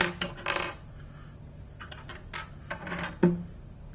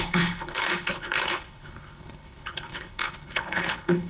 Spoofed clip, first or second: second